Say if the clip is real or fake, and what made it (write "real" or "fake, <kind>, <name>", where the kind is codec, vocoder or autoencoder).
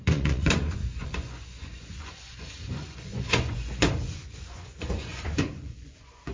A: fake, vocoder, Vocos